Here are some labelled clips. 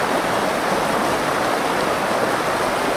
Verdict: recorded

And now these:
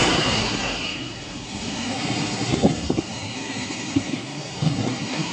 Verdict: remade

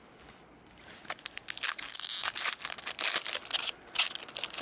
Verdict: recorded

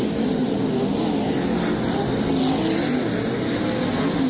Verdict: recorded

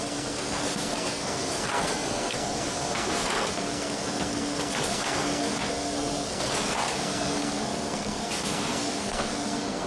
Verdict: remade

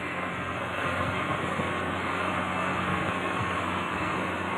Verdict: remade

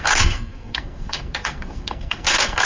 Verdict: remade